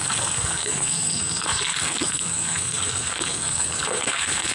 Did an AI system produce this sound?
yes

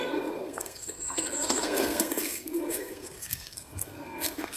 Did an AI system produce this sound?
yes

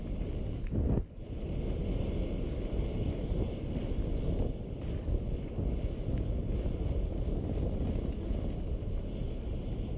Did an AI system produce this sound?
no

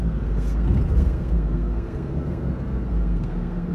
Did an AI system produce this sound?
yes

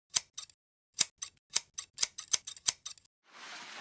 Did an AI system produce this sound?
no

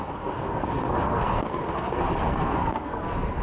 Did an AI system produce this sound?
yes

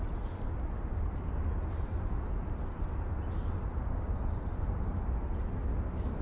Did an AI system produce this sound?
no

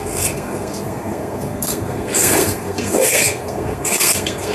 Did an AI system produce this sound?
yes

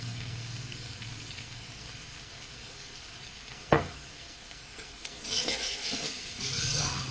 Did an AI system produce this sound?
yes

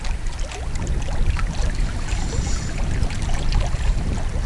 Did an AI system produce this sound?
no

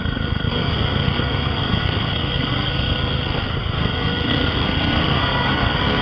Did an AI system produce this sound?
yes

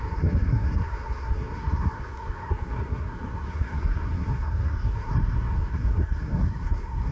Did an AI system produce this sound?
yes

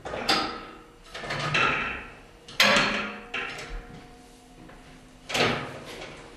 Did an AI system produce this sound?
no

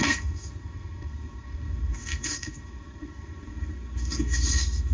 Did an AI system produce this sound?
yes